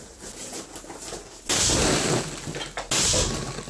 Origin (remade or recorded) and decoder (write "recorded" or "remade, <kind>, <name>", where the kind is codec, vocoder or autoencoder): recorded